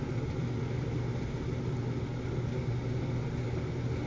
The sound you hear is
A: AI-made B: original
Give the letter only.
B